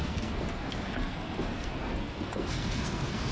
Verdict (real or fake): fake